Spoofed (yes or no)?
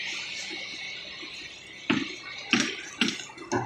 no